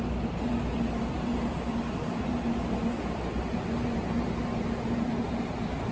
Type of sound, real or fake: fake